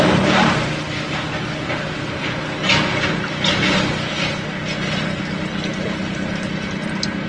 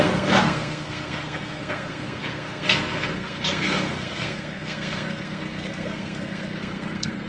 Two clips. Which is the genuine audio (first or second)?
first